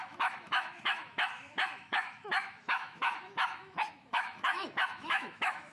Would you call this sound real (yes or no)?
no